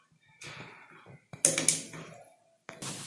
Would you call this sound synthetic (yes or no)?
no